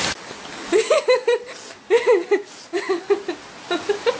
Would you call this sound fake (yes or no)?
no